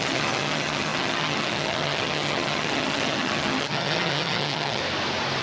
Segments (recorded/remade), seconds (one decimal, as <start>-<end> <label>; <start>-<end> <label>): 0.0-4.8 remade; 4.8-5.4 recorded